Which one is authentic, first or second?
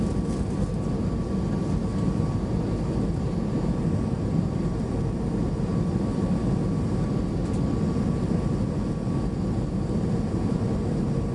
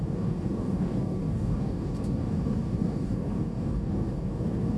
first